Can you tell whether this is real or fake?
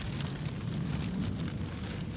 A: real